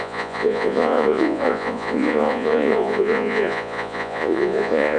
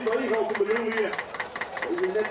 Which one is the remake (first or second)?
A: first